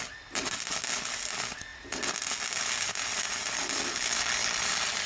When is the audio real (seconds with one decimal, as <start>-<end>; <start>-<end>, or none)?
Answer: 0.0-5.1